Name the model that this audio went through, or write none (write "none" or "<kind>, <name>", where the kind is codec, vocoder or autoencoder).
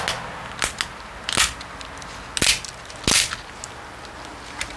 none